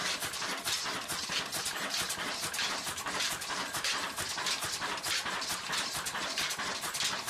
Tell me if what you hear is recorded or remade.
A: recorded